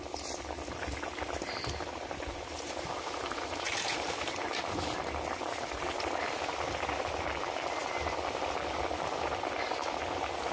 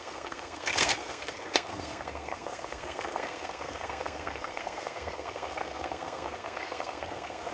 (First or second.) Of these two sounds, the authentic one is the first